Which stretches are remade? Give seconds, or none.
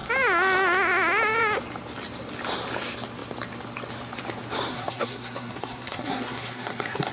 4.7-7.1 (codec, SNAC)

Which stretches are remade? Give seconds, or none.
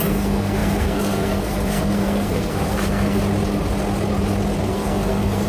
0.0-3.2 (codec, SNAC); 4.6-5.5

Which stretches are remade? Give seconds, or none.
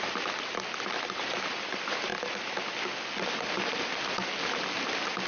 none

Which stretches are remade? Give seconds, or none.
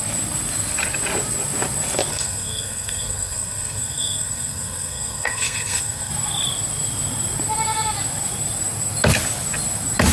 2.1-6.1 (codec, SNAC)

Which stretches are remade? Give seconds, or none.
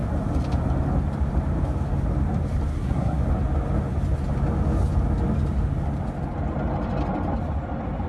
2.7-3.2 (codec, SNAC)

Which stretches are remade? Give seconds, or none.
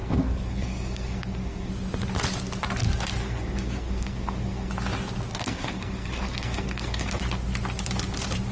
0.0-1.7 (codec, SNAC); 3.2-4.7; 5.3-7.2